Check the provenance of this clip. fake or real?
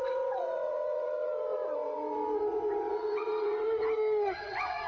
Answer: fake